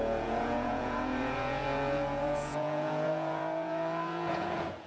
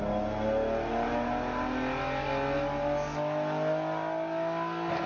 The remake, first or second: first